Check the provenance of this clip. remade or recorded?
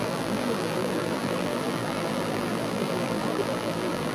remade